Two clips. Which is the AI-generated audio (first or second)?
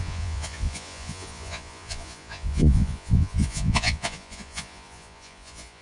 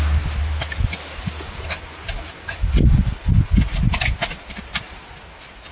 first